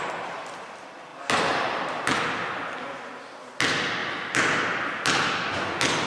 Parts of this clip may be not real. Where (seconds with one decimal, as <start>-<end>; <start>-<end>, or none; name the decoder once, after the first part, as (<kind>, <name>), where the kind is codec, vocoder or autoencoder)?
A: none